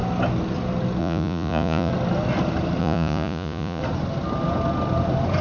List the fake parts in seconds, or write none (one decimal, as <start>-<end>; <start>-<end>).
1.0-1.9; 2.8-3.8